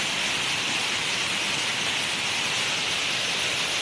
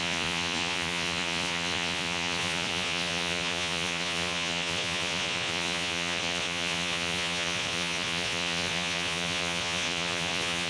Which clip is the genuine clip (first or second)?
first